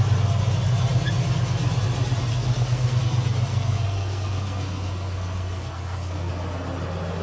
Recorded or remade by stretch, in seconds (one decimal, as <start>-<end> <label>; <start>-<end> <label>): 0.0-2.3 recorded; 2.3-3.0 remade; 3.0-3.5 recorded; 3.5-6.3 remade; 6.3-7.2 recorded